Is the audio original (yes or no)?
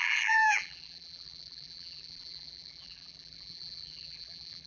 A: no